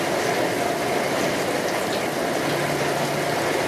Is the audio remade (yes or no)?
no